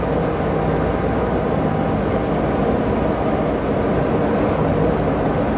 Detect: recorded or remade recorded